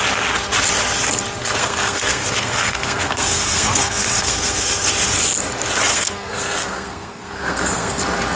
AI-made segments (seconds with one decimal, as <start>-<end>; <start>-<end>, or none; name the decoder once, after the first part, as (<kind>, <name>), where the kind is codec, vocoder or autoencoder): 1.4-4.9 (codec, SNAC); 5.9-8.0